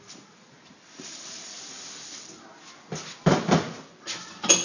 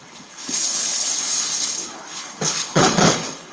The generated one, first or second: second